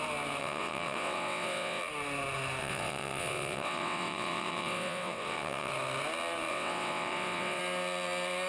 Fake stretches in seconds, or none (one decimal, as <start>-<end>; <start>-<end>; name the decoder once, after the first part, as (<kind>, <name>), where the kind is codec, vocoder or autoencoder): 0.4-1.8 (vocoder, WaveNeXt); 2.6-5.7; 6.5-7.6